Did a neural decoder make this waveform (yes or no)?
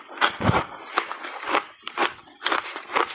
no